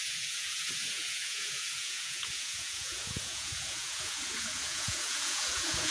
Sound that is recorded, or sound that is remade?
remade